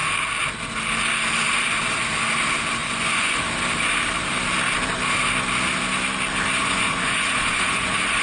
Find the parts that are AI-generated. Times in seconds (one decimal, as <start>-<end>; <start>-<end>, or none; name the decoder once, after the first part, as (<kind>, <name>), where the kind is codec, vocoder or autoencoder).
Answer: 2.8-3.4 (vocoder, Vocos); 6.6-8.2